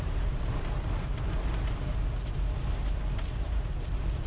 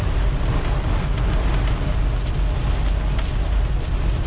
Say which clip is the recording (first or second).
second